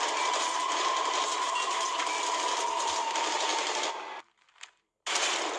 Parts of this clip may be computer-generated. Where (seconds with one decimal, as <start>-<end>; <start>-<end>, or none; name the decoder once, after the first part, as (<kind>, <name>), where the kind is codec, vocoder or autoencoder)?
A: none